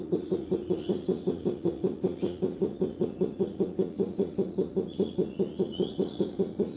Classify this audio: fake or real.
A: fake